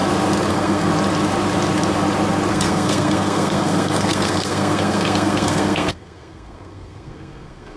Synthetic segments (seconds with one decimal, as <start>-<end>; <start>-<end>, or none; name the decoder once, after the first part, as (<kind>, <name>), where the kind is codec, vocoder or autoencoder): 0.5-0.9 (codec, SNAC); 2.5-7.8